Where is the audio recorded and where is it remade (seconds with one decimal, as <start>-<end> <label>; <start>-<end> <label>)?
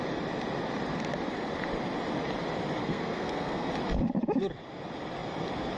0.0-2.8 recorded; 2.8-3.7 remade; 3.7-5.8 recorded